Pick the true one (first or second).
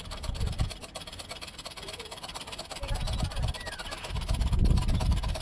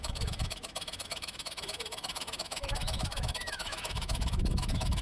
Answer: first